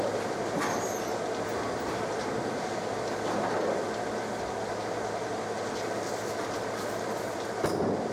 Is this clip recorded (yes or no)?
yes